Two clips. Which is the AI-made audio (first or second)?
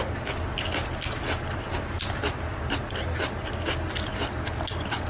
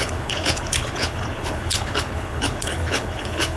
second